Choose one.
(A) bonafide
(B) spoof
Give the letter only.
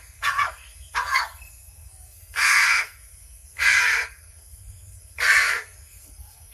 B